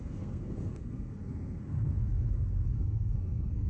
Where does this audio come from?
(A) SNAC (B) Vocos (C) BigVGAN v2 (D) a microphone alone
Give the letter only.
A